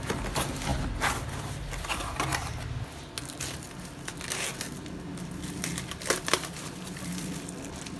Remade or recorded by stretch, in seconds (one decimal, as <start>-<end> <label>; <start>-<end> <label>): 0.0-8.0 recorded